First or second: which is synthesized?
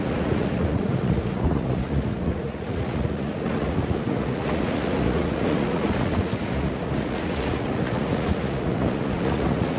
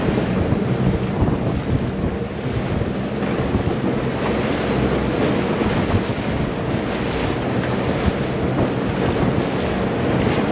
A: first